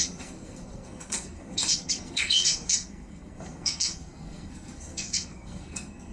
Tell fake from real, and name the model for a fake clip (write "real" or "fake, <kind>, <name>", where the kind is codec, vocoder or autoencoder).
fake, codec, SNAC